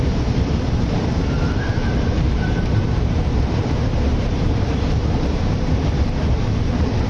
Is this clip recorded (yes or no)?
no